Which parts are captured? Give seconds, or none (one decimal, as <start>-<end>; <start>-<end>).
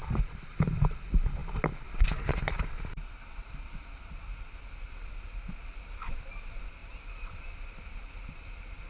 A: 0.7-6.8; 7.4-8.9